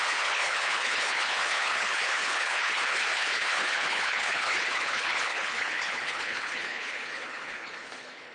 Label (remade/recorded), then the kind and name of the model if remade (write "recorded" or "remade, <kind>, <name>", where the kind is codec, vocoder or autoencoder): remade, codec, HILCodec